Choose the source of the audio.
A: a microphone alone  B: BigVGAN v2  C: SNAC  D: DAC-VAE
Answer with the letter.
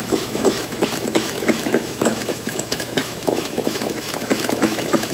D